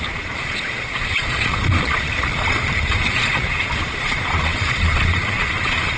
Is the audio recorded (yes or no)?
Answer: no